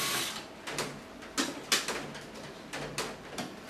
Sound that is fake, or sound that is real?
real